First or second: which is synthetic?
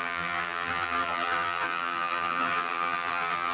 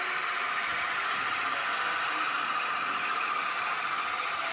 first